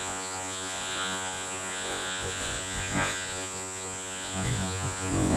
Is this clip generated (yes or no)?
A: yes